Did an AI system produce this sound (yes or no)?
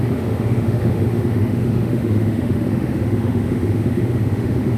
yes